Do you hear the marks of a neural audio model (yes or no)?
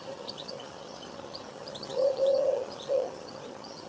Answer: yes